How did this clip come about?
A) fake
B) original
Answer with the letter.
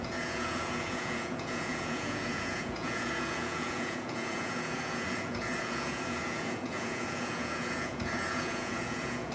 A